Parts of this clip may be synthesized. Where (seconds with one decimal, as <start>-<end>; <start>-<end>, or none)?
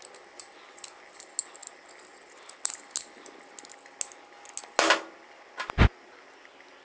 none